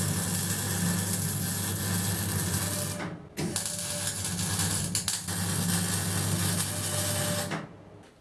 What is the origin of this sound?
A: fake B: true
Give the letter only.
B